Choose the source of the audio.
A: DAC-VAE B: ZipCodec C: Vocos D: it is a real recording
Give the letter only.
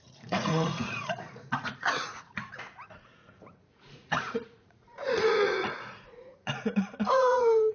C